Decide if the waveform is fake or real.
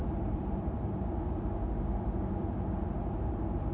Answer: real